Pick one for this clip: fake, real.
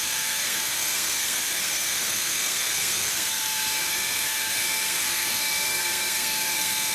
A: fake